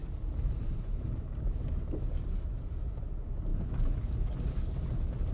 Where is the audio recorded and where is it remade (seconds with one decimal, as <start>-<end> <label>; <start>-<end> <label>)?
0.0-1.7 remade; 1.7-3.5 recorded; 3.5-4.2 remade; 4.2-5.3 recorded